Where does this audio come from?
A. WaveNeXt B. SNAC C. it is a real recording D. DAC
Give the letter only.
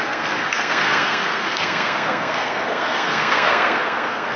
B